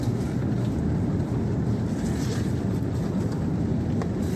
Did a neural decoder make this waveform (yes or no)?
no